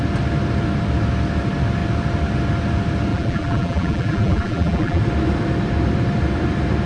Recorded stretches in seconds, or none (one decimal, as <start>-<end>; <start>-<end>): 0.0-3.1; 5.0-6.9